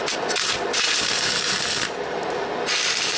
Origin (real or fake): real